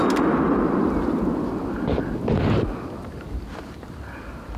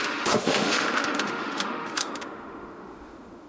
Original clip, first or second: first